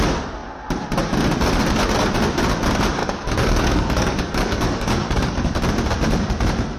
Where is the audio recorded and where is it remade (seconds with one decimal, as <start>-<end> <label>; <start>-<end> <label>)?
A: 0.0-3.0 recorded; 3.0-5.6 remade; 5.6-6.8 recorded